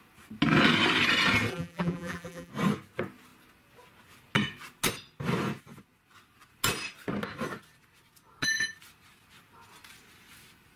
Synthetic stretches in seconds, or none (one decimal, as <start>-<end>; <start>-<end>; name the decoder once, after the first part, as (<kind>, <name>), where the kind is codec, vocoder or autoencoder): 1.5-2.5 (vocoder, BigVGAN v2)